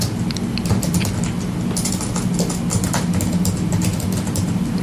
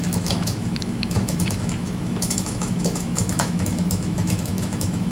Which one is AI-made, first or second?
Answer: second